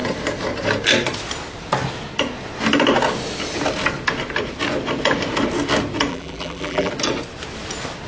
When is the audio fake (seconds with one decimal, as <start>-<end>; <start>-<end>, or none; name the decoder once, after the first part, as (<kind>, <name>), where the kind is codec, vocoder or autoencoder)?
6.1-6.9 (vocoder, BigVGAN v2)